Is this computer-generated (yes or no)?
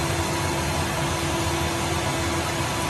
no